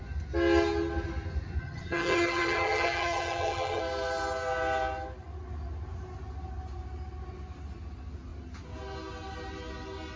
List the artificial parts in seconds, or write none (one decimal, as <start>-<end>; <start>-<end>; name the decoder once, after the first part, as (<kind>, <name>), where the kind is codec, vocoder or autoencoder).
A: 1.6-3.8 (vocoder, HiFi-GAN)